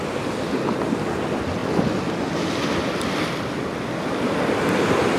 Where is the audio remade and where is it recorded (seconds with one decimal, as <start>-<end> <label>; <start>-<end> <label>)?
0.0-5.2 recorded